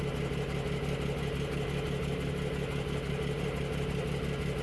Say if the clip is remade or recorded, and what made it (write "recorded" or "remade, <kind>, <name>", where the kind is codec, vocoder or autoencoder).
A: recorded